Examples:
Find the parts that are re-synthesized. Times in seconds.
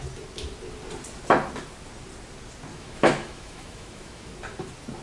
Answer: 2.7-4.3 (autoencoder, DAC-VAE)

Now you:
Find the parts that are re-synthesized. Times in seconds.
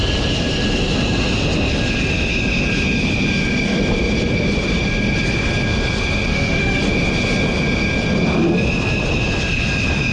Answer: 6.3-6.8 (autoencoder, DAC-VAE)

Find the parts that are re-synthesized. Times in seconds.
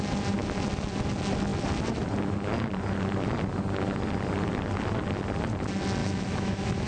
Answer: 6.0-6.9 (autoencoder, DAC-VAE)